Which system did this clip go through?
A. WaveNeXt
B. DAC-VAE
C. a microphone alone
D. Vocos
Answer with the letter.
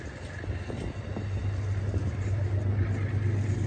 C